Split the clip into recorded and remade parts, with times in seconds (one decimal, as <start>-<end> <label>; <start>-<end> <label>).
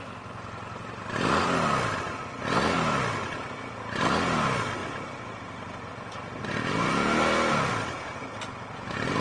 0.0-9.2 recorded